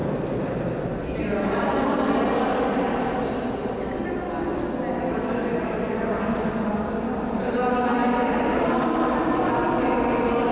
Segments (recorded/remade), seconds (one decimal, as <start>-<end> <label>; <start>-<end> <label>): 0.0-10.5 recorded